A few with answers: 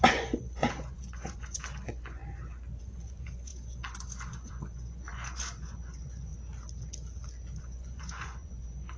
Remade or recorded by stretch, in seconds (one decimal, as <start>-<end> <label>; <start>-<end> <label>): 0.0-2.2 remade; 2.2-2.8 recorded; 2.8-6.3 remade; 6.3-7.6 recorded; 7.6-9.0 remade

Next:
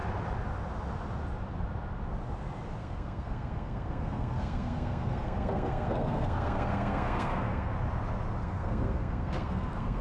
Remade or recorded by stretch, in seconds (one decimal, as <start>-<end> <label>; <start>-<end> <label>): 0.0-2.8 recorded; 2.8-7.7 remade; 7.7-8.4 recorded; 8.4-10.0 remade

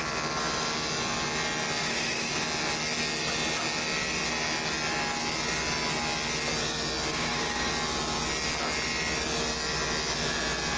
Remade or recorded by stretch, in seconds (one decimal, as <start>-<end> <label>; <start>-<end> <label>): 0.0-1.8 recorded; 1.8-2.3 remade; 2.3-7.1 recorded; 7.1-7.7 remade; 7.7-10.8 recorded

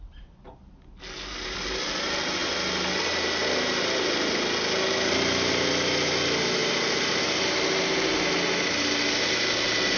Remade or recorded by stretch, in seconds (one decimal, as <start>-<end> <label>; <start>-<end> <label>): 0.0-10.0 recorded